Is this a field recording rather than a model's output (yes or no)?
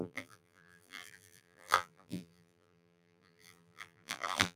no